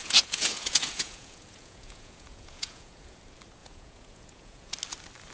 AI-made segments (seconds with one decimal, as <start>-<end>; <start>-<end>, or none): 0.0-3.2; 3.6-4.7